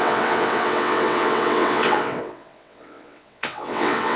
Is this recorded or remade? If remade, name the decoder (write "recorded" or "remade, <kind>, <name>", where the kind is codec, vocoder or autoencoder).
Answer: remade, vocoder, WaveNeXt